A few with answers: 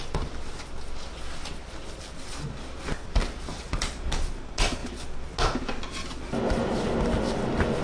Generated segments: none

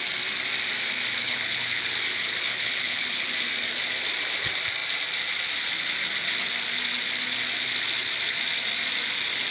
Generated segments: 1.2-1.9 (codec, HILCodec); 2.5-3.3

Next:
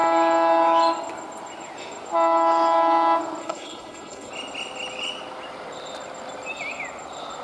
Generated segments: 3.4-4.3 (codec, HILCodec)

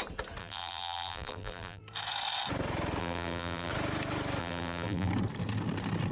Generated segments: 0.4-1.8 (vocoder, BigVGAN v2); 3.0-3.7; 4.4-5.1